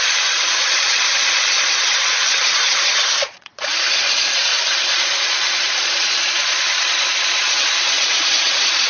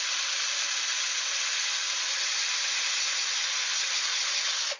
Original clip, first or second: second